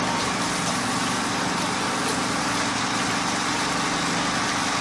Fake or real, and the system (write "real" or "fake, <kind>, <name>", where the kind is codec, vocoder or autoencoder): real